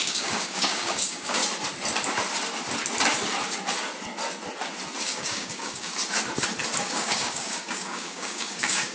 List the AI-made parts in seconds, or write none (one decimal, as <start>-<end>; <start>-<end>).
0.0-1.4; 5.0-5.9; 6.8-8.9